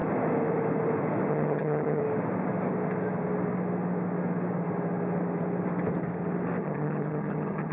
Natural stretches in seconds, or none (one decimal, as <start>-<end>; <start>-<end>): 0.0-1.3; 2.0-6.6